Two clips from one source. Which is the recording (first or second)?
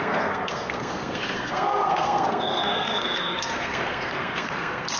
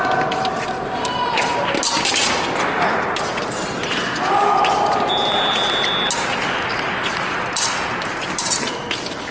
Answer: second